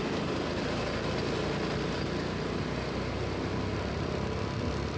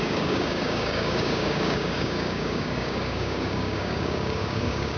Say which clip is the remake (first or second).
second